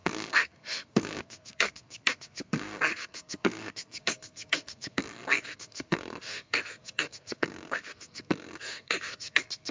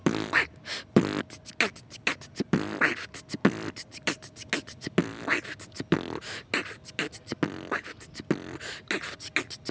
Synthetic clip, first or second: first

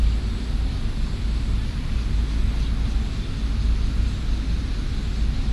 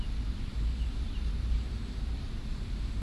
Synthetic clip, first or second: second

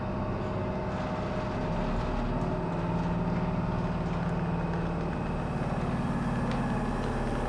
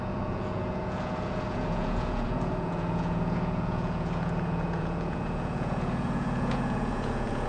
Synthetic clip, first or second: second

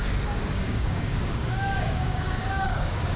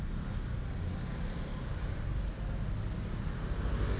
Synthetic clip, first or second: first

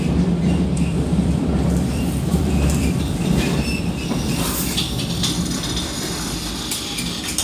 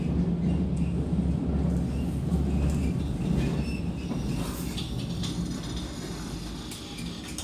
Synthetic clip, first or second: first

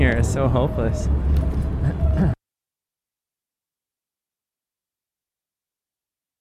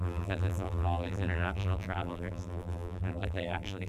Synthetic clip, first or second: second